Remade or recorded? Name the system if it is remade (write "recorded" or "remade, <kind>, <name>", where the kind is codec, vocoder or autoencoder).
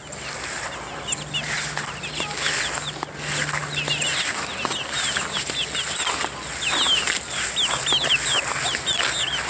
recorded